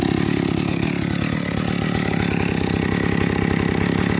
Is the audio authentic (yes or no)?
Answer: yes